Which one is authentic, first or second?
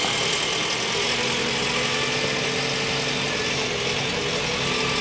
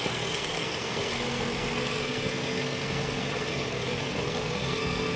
first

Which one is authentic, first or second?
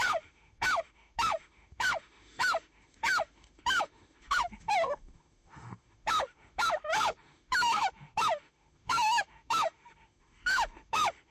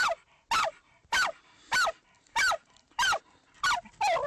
second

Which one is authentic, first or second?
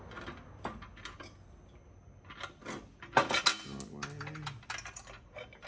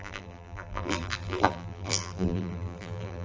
first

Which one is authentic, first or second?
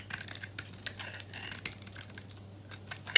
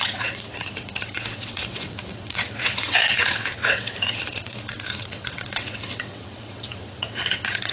first